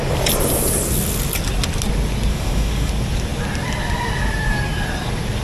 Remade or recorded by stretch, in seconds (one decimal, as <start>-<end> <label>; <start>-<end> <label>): 0.0-2.3 recorded; 2.3-2.9 remade; 2.9-5.4 recorded